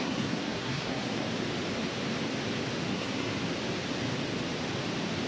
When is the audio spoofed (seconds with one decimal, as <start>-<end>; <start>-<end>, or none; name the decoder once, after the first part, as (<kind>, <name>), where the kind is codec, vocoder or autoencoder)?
0.0-1.3 (codec, SNAC); 2.9-3.3